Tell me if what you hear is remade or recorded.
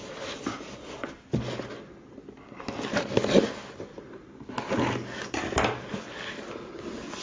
recorded